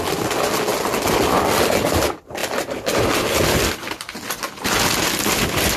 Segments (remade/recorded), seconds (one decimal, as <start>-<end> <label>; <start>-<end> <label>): 0.0-5.8 recorded